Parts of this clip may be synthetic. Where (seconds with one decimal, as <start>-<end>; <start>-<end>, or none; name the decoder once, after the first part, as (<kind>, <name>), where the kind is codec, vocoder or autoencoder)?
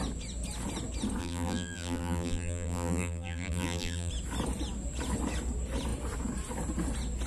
1.2-4.1 (vocoder, BigVGAN v2)